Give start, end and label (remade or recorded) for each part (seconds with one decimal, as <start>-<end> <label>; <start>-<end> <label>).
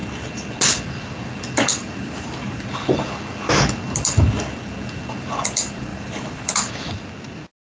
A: 0.0-1.8 recorded; 1.8-2.7 remade; 2.7-5.9 recorded; 5.9-6.7 remade; 6.7-7.8 recorded